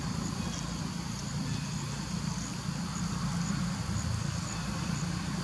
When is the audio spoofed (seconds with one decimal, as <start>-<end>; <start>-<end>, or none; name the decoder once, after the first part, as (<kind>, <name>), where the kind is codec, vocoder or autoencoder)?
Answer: none